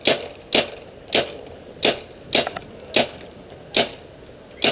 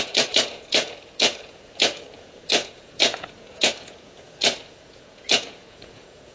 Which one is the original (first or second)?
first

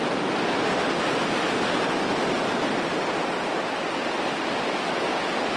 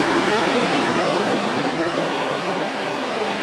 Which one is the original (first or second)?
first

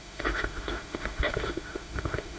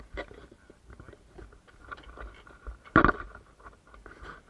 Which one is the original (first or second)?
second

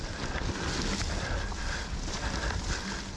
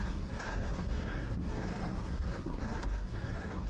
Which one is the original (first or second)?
first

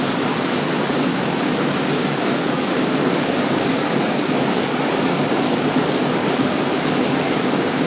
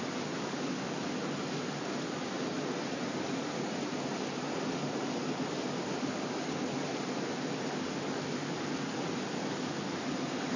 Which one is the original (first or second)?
second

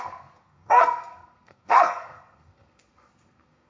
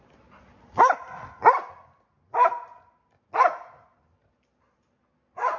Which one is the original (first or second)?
second